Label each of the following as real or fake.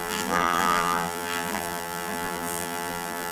fake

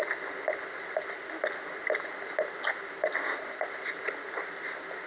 real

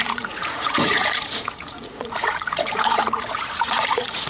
fake